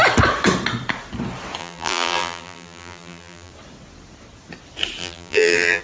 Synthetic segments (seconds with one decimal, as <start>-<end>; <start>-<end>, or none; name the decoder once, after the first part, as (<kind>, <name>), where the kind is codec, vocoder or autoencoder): 1.6-3.5 (vocoder, BigVGAN v2); 5.0-5.8